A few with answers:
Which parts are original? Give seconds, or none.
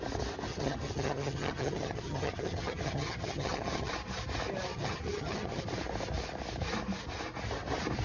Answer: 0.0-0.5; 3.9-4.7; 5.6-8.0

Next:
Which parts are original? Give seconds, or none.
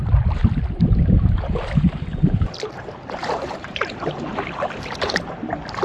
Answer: 0.0-2.1; 2.8-3.2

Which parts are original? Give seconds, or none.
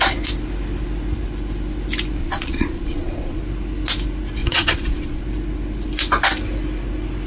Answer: 0.0-2.2; 3.4-4.4; 5.2-7.3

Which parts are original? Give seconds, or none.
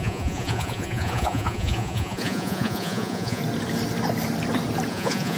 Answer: 3.4-4.9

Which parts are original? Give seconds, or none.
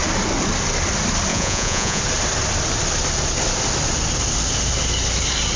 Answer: 0.0-1.3; 2.0-5.6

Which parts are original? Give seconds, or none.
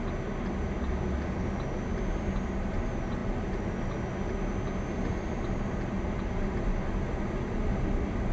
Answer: 0.0-8.3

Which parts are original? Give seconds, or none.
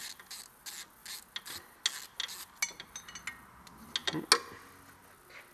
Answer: 0.0-5.5